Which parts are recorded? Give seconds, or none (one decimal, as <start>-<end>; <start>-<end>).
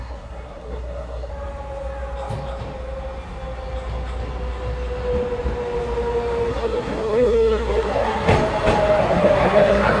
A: 1.3-6.5; 8.3-9.0